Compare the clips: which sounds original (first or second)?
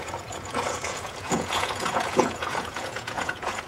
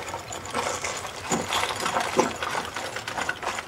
second